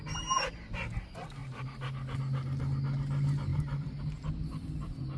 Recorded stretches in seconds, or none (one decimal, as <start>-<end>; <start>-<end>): 0.0-3.5; 4.0-5.2